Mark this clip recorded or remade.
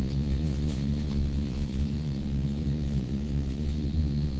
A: remade